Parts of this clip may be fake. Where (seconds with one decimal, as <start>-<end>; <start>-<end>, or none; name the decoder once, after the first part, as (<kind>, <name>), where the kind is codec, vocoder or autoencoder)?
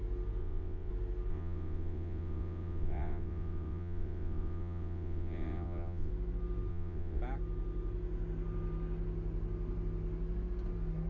0.4-0.9 (vocoder, WaveNeXt); 1.3-6.1; 6.7-7.2